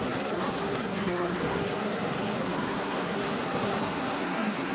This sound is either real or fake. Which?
fake